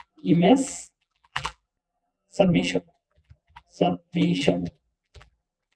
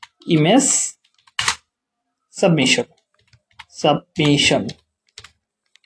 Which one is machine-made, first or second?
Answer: first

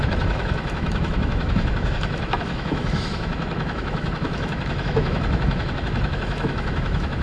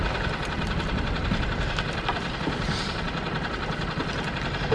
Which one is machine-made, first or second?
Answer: first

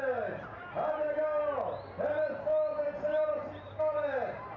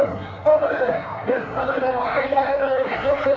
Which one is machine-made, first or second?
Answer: second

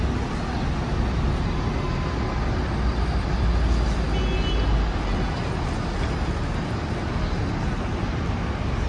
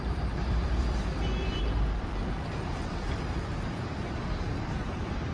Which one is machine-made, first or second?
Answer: second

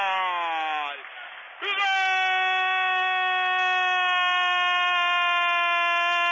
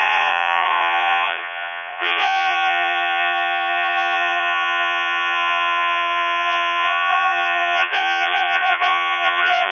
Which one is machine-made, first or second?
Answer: second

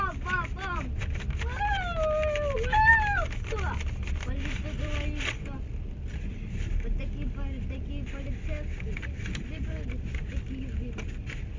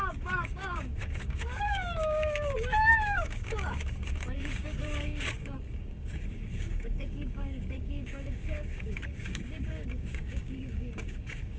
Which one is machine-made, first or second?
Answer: second